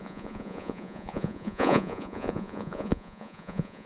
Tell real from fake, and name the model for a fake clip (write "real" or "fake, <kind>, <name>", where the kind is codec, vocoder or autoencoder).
fake, vocoder, Vocos